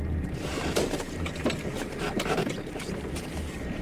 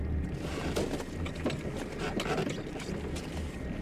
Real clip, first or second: second